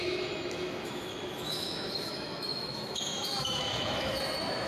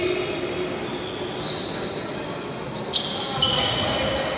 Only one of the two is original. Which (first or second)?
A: second